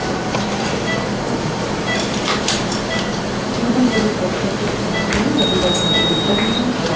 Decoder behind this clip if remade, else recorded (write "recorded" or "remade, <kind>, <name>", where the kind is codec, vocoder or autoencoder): remade, vocoder, BigVGAN v2